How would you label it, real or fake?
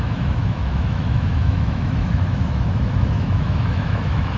fake